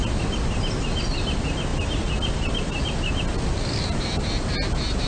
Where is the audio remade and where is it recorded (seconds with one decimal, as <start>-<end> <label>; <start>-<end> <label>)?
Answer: 0.0-5.1 recorded